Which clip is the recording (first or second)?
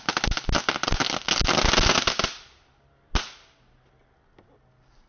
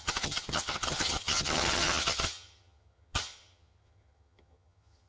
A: first